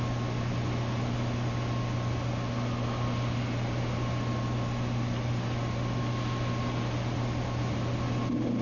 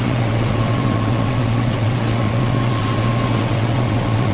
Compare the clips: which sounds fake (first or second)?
second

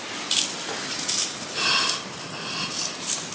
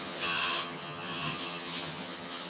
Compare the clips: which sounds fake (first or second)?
second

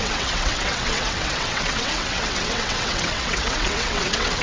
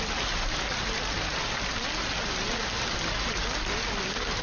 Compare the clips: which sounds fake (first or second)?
first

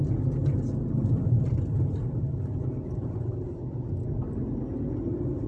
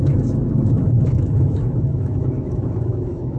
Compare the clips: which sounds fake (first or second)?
second